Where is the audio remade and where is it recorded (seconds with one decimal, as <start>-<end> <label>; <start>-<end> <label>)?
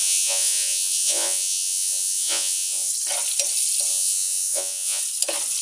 0.0-2.9 remade; 2.9-3.9 recorded; 3.9-5.0 remade; 5.0-5.6 recorded